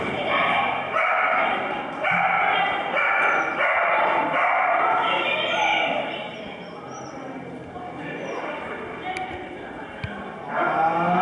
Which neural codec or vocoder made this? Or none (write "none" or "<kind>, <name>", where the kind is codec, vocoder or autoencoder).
none